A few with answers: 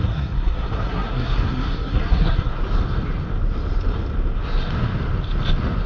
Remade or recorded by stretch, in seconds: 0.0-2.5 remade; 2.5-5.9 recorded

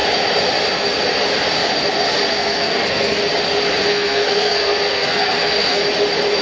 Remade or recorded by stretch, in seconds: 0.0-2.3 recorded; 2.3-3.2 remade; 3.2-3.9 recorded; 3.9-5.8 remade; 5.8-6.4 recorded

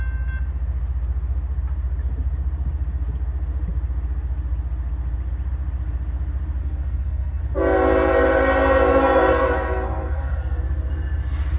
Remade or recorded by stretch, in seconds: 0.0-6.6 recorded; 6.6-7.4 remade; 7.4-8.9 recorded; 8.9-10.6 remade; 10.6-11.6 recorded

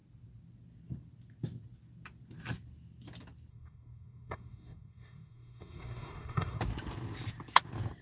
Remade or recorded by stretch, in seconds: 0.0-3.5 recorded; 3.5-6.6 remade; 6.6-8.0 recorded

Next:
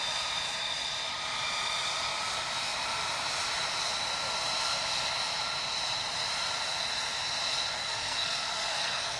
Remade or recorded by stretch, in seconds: 0.0-7.8 recorded; 7.8-9.2 remade

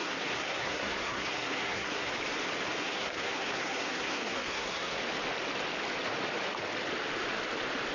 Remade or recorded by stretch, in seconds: 0.0-2.1 remade; 2.1-2.8 recorded; 2.8-5.0 remade; 5.0-7.9 recorded

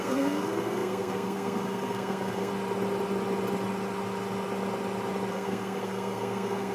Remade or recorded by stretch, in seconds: 0.0-2.5 remade; 2.5-5.3 recorded; 5.3-6.7 remade